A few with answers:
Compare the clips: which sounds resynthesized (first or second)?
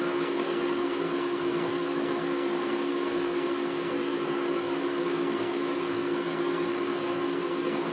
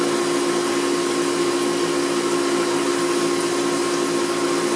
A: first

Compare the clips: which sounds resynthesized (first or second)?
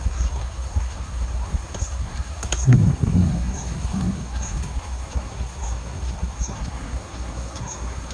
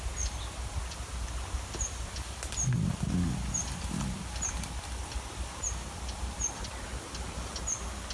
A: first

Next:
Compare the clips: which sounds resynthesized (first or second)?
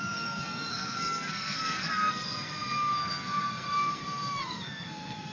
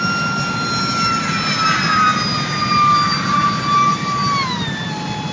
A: first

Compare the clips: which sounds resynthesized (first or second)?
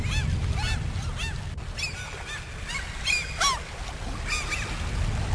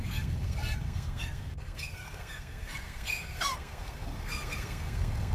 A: second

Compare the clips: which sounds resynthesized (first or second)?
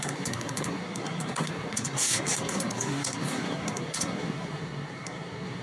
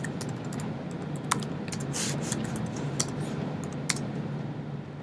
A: first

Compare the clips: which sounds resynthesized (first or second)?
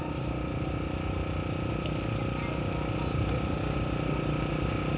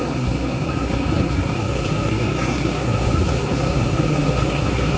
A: second